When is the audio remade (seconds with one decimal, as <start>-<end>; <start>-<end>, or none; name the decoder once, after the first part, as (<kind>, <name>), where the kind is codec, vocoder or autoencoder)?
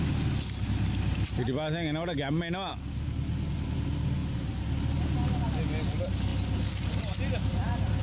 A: 4.2-4.8 (vocoder, BigVGAN v2)